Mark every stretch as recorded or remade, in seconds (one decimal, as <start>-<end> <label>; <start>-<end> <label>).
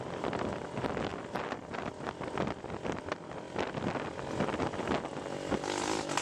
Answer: 0.0-6.2 recorded